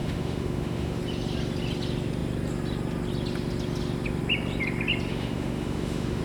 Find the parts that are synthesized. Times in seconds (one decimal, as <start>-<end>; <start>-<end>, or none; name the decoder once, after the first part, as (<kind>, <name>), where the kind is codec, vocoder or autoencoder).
0.0-1.0 (autoencoder, DAC-VAE); 5.1-6.2